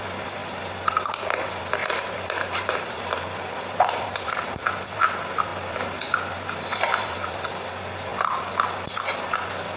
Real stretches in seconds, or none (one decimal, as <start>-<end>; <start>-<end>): 0.0-1.8; 4.6-9.8